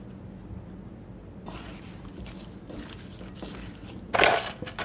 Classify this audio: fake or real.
real